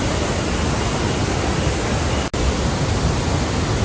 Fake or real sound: real